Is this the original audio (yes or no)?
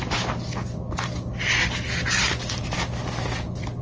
yes